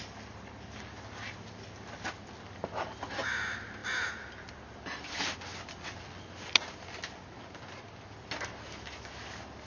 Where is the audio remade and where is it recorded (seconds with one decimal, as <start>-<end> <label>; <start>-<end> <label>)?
0.0-9.7 recorded